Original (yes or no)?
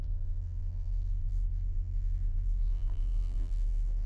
no